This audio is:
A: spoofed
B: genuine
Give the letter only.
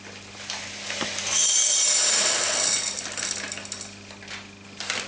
B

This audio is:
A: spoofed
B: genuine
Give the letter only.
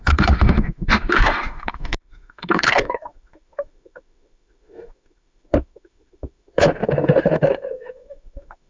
A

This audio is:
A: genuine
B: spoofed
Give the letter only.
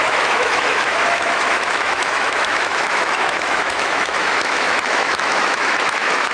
B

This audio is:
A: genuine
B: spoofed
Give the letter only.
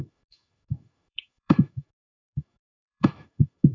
B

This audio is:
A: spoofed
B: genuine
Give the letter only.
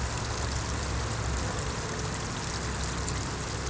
B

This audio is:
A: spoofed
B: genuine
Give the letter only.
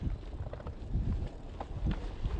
B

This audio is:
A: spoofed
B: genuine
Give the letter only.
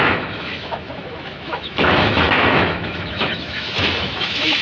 A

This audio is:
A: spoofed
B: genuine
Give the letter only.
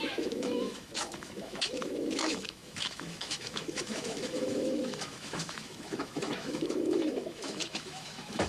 A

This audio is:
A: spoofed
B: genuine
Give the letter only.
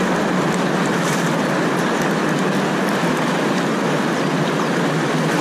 B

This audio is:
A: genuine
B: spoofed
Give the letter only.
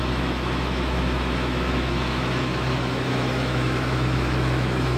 B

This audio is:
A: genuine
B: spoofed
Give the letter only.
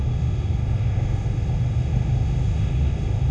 B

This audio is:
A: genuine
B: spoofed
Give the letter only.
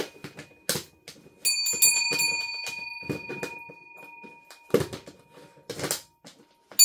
A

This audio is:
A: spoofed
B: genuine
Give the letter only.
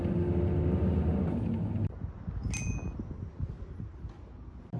B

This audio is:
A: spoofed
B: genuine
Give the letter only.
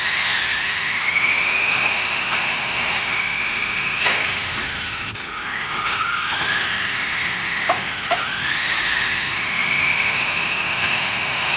A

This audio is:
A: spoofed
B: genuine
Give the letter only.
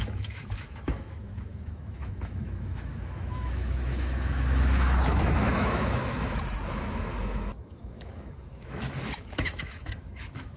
A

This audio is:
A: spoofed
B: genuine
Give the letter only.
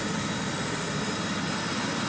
B